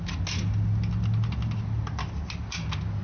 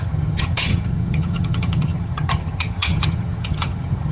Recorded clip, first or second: first